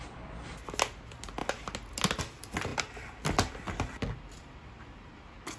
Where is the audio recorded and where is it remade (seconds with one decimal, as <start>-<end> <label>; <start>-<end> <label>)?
0.0-5.6 recorded

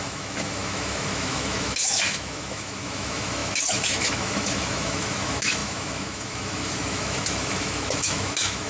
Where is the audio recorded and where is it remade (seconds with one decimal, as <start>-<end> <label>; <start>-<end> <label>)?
0.0-8.7 remade

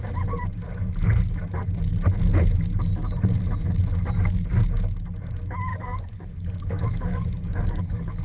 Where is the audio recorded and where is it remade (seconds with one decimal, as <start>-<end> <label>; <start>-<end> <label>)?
0.0-5.7 recorded; 5.7-8.2 remade

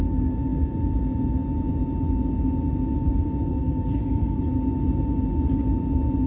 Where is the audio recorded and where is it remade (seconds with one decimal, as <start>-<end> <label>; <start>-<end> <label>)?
0.0-3.5 recorded; 3.5-4.4 remade; 4.4-6.3 recorded

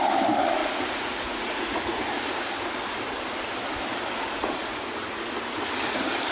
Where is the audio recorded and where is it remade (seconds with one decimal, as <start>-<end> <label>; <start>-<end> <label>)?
0.0-0.6 recorded; 0.6-2.0 remade; 2.0-4.4 recorded; 4.4-5.3 remade; 5.3-6.3 recorded